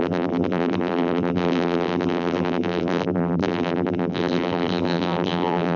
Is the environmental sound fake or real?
fake